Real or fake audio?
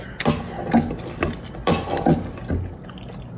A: real